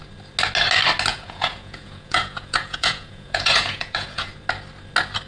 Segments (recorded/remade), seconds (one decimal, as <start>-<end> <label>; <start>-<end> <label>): 0.0-1.1 recorded; 1.1-4.3 remade; 4.3-5.3 recorded